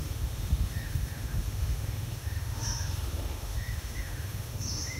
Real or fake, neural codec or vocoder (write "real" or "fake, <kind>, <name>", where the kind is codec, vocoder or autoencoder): fake, autoencoder, DAC-VAE